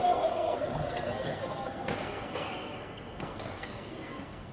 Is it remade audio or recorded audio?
remade